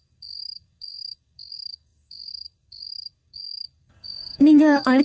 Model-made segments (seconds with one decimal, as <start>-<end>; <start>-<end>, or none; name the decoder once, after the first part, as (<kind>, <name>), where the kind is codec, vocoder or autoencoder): 0.0-5.0 (codec, SNAC)